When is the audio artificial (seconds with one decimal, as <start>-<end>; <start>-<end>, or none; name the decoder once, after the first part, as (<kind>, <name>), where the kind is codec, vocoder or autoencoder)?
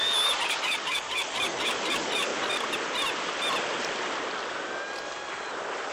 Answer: 0.0-2.3 (codec, DAC)